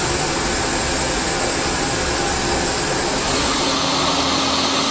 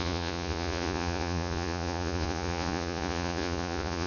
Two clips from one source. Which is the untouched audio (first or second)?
first